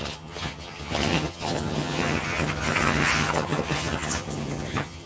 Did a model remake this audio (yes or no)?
yes